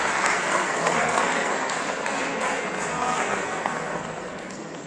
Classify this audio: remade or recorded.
remade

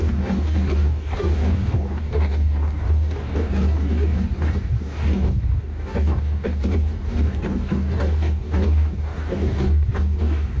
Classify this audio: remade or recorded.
remade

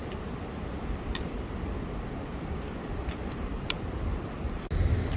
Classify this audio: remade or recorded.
recorded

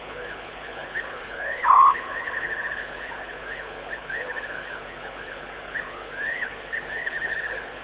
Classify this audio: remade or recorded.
remade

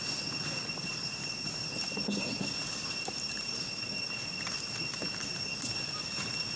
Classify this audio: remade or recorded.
recorded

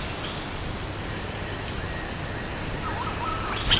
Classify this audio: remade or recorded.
recorded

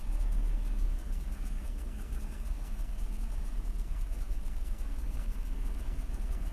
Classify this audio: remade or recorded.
remade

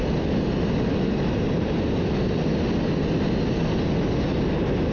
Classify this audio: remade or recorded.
recorded